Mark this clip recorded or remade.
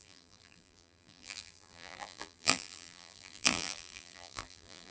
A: remade